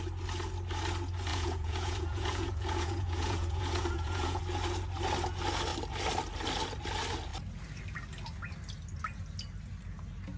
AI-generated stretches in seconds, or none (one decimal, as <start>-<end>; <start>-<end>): 1.3-4.4